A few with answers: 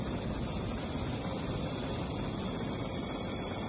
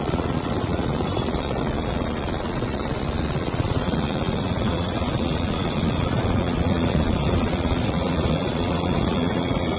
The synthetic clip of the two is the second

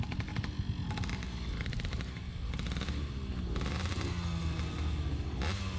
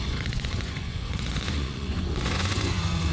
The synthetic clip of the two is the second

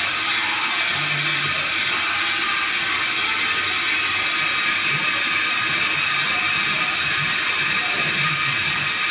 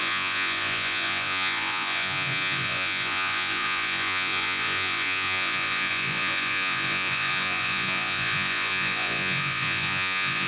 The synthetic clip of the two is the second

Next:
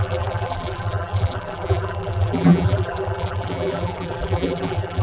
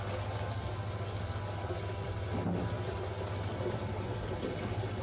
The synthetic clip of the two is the first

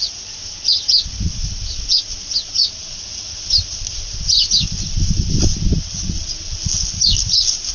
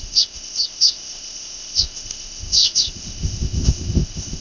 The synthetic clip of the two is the second